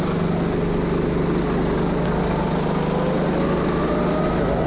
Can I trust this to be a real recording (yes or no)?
yes